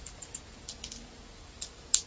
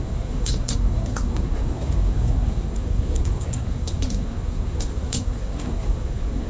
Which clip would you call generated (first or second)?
second